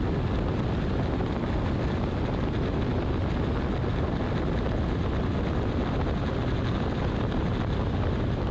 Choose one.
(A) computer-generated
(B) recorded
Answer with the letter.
B